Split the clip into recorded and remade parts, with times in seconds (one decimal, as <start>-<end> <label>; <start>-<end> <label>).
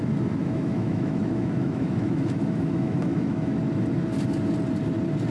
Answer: 0.0-0.4 recorded; 0.4-3.6 remade; 3.6-5.3 recorded